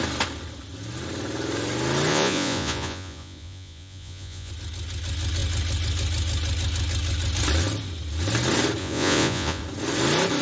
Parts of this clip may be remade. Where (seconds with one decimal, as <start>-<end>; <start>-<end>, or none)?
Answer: 2.1-4.5; 8.8-9.6

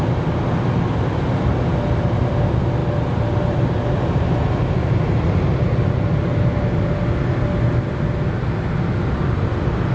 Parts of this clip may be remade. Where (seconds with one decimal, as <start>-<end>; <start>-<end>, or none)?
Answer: none

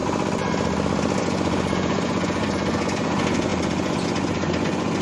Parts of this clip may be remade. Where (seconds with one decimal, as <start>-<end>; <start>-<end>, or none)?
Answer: 1.2-5.0

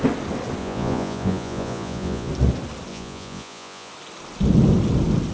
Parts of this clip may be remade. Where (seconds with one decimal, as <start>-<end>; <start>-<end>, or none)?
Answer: 0.6-2.3; 2.9-3.9